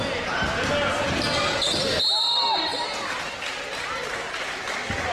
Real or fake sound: real